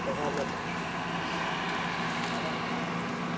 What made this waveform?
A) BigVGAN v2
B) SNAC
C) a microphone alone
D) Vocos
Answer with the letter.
C